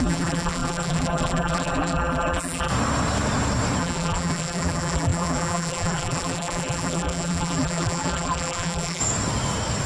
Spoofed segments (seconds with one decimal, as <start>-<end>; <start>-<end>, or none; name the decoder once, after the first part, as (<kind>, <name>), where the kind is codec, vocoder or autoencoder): 0.0-2.7 (vocoder, BigVGAN v2); 3.8-9.0